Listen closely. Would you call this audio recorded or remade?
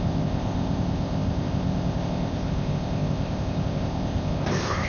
remade